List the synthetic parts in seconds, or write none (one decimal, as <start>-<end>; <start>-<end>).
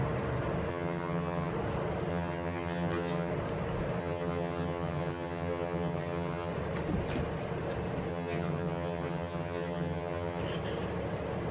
0.7-1.5; 2.1-3.3; 4.0-6.5; 8.1-10.4